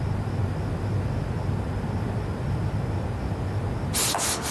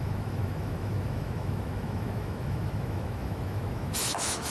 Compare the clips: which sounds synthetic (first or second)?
second